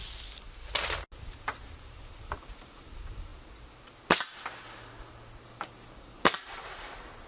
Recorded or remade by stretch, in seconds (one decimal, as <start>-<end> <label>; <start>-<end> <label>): 0.0-1.2 recorded; 1.2-3.3 remade; 3.3-5.4 recorded; 5.4-7.3 remade